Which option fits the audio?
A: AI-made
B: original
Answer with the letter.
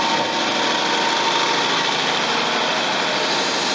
B